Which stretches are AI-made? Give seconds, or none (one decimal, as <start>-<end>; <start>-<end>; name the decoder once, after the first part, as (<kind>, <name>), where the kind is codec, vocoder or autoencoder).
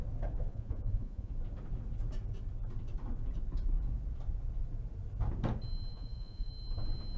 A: 0.5-1.3 (vocoder, Vocos); 5.9-6.5